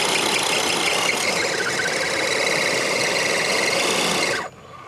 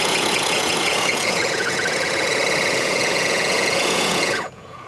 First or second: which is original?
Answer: first